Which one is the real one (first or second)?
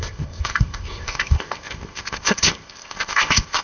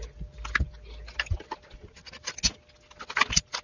second